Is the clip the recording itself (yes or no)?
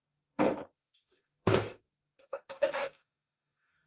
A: no